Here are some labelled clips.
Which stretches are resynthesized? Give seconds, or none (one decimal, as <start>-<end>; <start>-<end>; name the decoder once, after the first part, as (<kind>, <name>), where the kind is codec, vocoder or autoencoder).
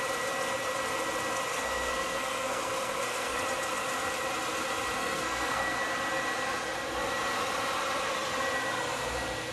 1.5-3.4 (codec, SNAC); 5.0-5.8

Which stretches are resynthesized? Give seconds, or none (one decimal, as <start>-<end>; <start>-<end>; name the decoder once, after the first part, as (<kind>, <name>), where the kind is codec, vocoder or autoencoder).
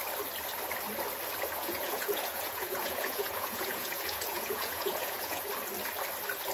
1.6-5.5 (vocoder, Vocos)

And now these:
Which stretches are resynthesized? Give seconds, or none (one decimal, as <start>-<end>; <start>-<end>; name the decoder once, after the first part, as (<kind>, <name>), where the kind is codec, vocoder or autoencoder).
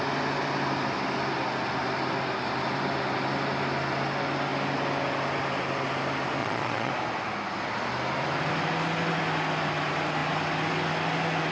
6.4-6.9 (vocoder, Vocos)